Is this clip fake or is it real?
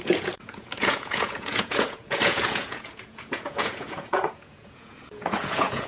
fake